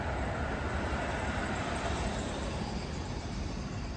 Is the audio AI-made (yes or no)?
yes